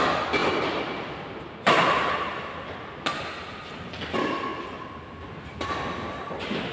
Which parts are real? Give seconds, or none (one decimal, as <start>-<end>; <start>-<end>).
0.0-6.7